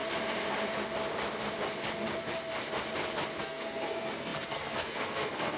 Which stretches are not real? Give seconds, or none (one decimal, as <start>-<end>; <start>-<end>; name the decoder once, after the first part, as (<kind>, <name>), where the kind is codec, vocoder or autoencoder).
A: 3.4-5.6 (codec, SNAC)